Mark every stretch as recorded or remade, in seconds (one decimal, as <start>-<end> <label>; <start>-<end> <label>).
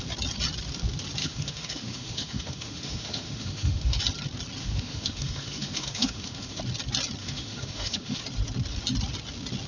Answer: 0.0-1.2 recorded; 1.2-4.0 remade; 4.0-4.6 recorded; 4.6-6.6 remade; 6.6-7.2 recorded; 7.2-8.2 remade; 8.2-9.7 recorded